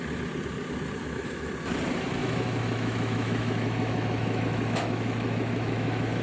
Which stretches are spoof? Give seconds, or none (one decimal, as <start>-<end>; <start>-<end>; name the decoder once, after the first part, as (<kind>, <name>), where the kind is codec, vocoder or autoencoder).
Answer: 1.0-1.5 (autoencoder, DAC-VAE); 2.2-6.2